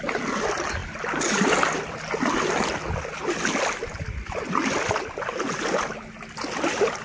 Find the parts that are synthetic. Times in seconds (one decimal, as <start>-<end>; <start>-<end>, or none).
none